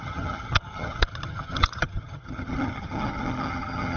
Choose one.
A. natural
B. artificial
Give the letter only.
B